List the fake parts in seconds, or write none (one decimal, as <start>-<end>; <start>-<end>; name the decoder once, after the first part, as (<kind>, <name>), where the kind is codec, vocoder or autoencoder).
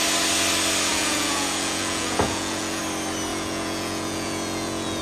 0.9-2.8 (vocoder, Vocos); 3.3-5.0